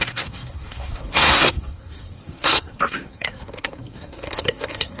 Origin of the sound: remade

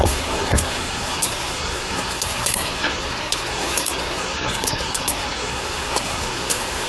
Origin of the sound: remade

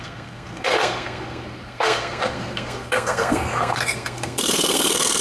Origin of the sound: remade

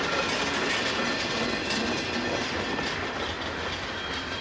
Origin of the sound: recorded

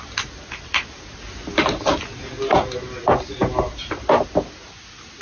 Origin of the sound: recorded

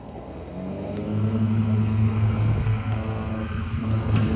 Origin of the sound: remade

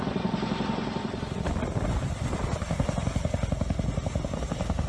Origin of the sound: recorded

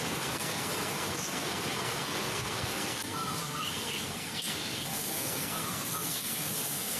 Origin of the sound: remade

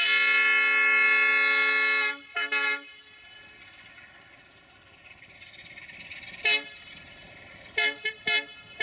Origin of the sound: recorded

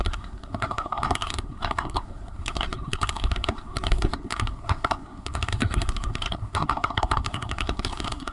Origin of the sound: remade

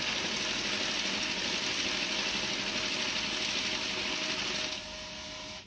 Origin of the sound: recorded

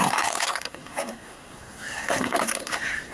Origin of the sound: remade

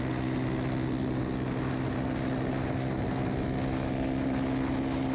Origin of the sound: recorded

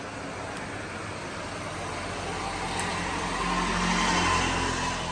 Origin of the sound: recorded